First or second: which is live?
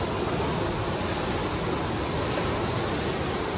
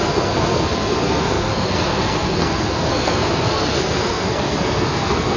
first